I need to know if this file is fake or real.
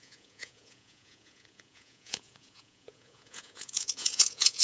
fake